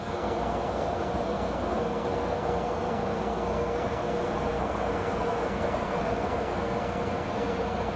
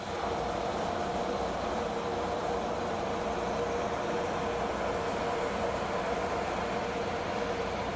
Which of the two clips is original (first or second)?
second